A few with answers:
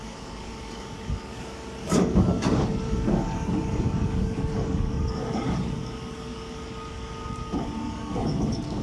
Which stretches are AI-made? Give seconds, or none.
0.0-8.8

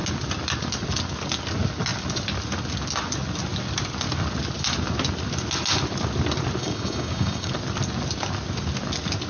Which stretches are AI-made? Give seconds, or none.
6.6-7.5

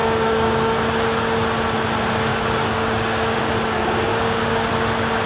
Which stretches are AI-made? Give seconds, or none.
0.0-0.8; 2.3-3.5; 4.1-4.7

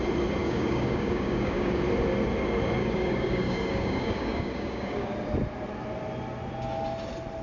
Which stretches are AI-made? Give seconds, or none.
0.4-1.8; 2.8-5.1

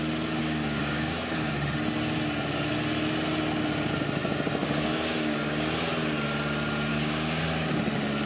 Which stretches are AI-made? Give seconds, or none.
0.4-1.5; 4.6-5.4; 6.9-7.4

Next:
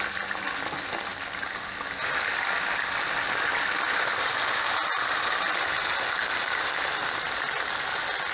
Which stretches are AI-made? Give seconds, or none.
none

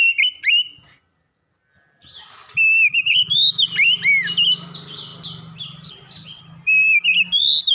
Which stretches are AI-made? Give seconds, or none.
2.4-3.0

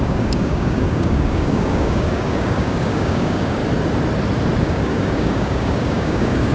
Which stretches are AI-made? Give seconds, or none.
0.0-3.6; 4.6-6.5